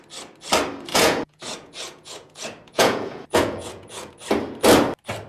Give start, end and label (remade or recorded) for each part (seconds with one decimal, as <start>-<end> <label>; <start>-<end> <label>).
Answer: 0.0-0.9 recorded; 0.9-4.1 remade; 4.1-5.3 recorded